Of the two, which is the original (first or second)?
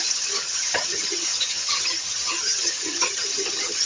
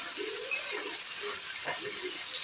second